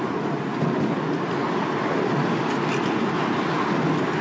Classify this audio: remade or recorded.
recorded